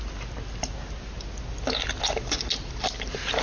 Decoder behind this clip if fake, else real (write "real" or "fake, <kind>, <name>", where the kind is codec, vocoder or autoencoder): real